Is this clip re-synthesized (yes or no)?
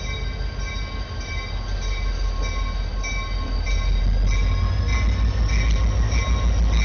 no